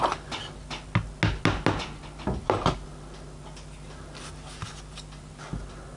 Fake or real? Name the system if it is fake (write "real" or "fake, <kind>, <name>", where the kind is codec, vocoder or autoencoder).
real